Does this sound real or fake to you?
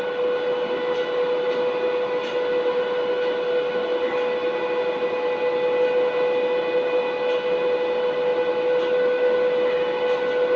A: real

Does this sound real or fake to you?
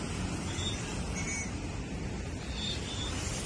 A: fake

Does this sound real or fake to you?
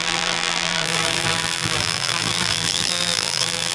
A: fake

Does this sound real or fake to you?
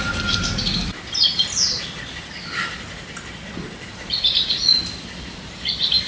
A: real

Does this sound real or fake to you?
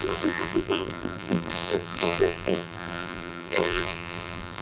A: fake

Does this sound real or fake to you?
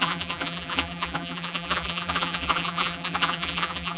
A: fake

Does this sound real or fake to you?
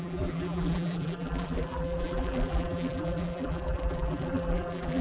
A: fake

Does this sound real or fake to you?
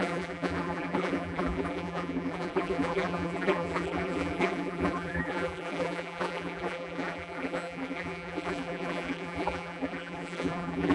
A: fake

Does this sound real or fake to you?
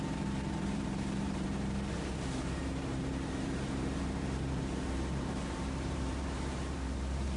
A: fake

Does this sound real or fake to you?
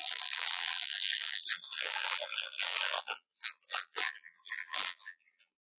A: fake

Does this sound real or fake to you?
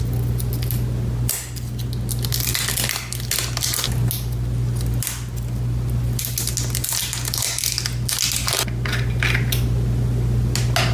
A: real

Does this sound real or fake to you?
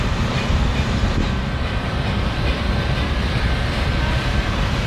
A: fake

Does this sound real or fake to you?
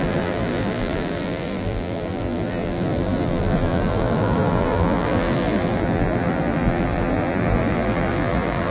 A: fake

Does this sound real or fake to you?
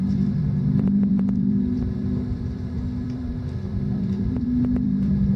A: fake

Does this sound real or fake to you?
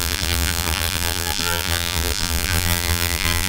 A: fake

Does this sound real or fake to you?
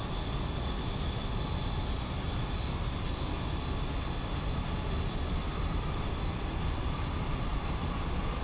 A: real